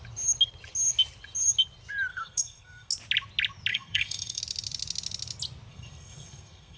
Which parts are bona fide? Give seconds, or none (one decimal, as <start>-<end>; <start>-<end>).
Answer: 0.0-2.1; 2.9-3.7; 4.4-5.7